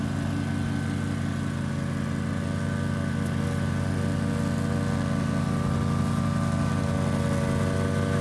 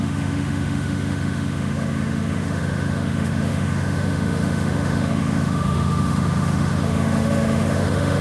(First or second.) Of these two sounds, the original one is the first